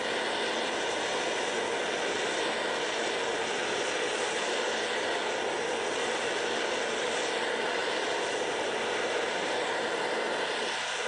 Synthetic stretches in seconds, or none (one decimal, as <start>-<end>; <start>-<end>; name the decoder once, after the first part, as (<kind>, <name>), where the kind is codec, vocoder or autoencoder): none